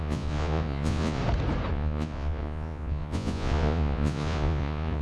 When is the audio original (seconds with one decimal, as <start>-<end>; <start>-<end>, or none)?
1.2-1.7